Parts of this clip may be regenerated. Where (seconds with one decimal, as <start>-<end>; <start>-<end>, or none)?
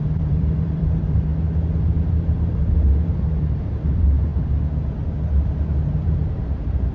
0.0-1.3; 3.1-4.3; 5.4-6.9